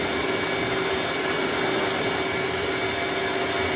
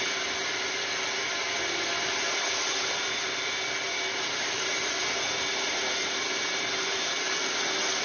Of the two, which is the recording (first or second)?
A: first